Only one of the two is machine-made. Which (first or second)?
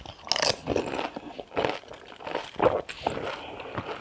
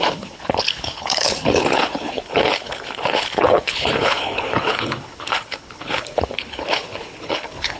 second